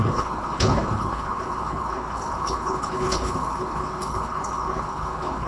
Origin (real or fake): fake